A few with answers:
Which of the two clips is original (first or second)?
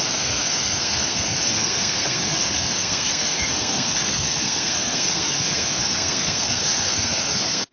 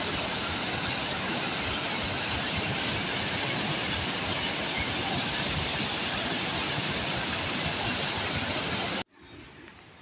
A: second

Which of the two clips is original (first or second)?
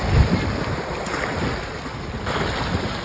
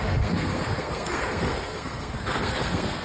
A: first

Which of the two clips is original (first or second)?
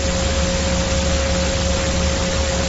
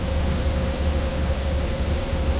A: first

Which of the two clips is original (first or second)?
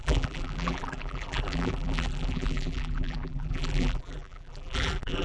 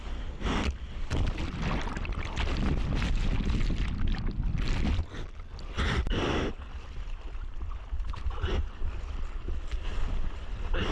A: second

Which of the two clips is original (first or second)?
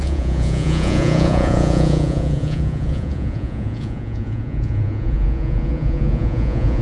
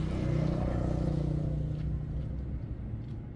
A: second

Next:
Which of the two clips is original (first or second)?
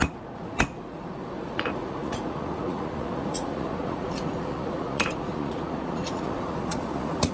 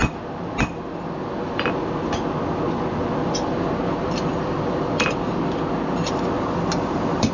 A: second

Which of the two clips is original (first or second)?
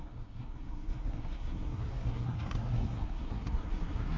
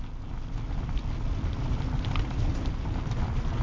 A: second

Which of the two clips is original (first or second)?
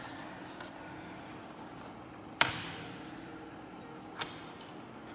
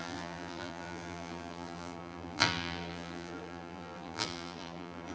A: first